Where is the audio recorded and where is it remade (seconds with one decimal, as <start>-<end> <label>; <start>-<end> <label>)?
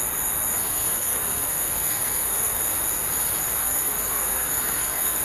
0.0-0.6 recorded; 0.6-2.6 remade; 2.6-3.6 recorded; 3.6-5.2 remade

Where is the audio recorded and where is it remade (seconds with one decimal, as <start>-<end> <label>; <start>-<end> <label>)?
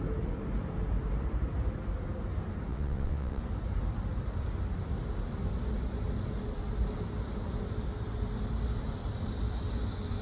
0.0-2.7 recorded; 2.7-3.4 remade; 3.4-10.2 recorded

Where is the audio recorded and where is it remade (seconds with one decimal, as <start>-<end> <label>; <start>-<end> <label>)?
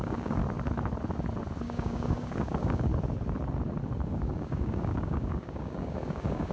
0.0-0.4 remade; 0.4-1.6 recorded; 1.6-2.9 remade; 2.9-4.1 recorded; 4.1-6.5 remade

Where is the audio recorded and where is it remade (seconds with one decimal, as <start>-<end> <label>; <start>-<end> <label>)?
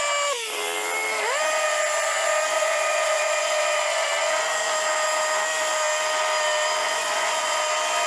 0.0-2.5 recorded; 2.5-4.1 remade; 4.1-6.8 recorded; 6.8-7.6 remade; 7.6-8.1 recorded